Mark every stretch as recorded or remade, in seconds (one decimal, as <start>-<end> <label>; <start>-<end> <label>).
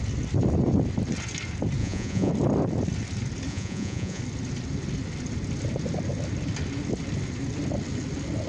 0.0-1.8 recorded; 1.8-2.3 remade; 2.3-3.5 recorded; 3.5-4.2 remade; 4.2-8.5 recorded